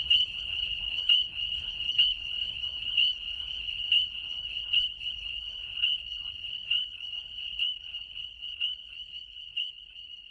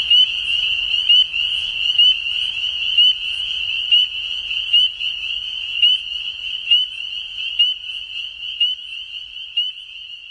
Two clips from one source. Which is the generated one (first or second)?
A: first